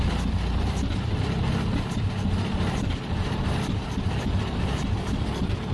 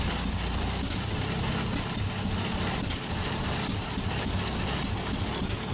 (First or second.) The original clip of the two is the second